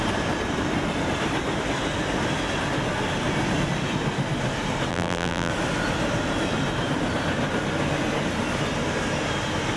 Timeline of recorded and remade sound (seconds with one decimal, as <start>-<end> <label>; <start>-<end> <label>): 0.0-4.9 recorded; 4.9-5.5 remade; 5.5-9.8 recorded